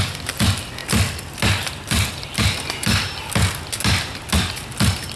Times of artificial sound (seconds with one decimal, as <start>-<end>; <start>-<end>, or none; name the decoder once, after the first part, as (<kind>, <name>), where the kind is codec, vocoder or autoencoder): none